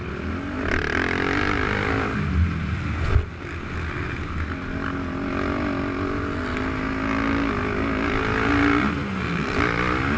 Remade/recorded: recorded